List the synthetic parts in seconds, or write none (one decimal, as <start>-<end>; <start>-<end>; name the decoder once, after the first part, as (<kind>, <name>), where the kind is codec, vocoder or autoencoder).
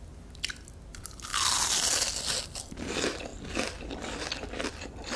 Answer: none